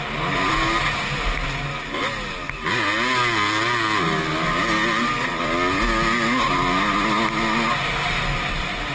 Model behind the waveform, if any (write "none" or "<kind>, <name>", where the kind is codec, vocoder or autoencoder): none